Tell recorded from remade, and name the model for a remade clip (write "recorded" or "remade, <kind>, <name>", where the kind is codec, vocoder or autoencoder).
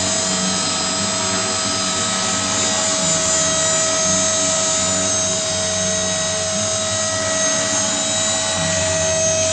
recorded